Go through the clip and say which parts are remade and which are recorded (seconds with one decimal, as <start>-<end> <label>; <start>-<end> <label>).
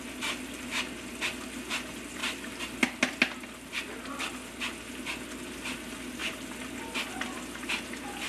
0.0-8.3 recorded